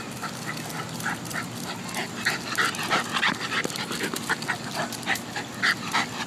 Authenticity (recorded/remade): recorded